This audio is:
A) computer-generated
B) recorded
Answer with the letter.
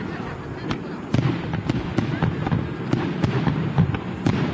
B